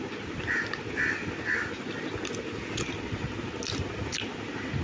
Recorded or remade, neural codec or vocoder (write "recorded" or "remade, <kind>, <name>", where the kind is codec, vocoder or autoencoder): recorded